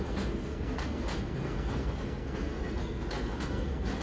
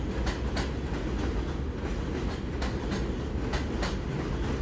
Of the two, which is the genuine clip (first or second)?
second